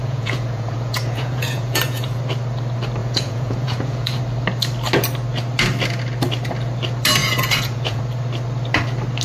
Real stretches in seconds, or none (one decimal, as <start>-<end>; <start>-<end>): 2.2-3.0; 4.2-7.2; 8.0-9.2